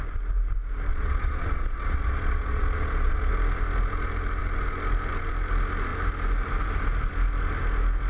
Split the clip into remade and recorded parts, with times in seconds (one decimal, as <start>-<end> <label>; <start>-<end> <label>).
0.0-0.9 recorded; 0.9-3.3 remade; 3.3-8.1 recorded